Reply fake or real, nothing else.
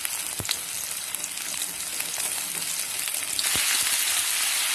real